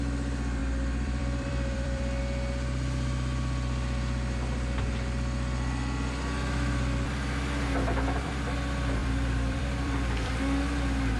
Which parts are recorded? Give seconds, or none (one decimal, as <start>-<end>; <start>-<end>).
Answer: 0.0-0.6; 2.2-9.0; 10.3-11.2